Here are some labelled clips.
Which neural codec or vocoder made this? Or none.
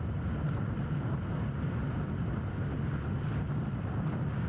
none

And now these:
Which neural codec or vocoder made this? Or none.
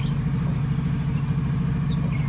none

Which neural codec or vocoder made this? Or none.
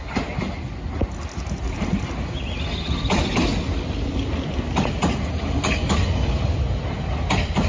none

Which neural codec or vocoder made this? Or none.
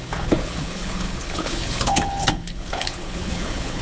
codec, HILCodec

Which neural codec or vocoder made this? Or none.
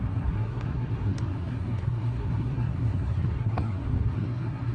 codec, SNAC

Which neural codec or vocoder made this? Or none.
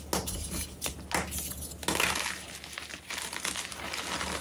none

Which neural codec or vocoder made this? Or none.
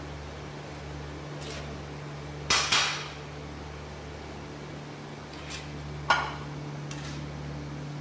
none